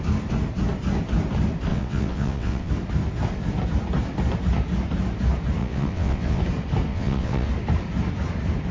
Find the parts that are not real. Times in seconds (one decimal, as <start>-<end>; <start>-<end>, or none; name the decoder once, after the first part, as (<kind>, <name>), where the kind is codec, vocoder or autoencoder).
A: 1.7-2.7 (vocoder, WaveNeXt); 5.6-6.4; 6.9-7.5